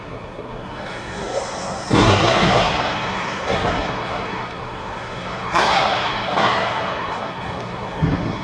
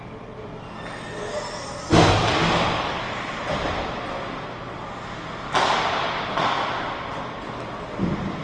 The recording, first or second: second